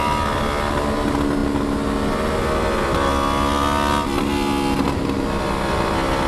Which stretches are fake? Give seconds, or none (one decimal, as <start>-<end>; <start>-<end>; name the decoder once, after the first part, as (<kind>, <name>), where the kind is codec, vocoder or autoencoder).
none